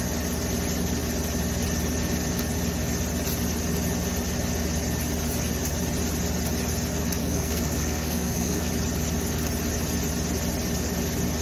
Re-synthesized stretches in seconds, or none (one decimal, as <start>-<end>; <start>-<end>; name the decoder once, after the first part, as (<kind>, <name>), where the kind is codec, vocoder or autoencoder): 7.2-8.7 (codec, SNAC)